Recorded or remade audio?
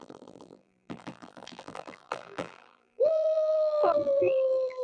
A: remade